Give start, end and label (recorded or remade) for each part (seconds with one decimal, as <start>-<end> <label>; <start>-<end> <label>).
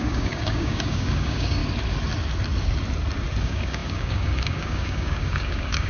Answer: 0.0-1.6 remade; 1.6-3.4 recorded; 3.4-5.9 remade